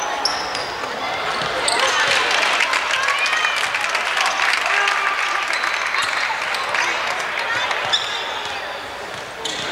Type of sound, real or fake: real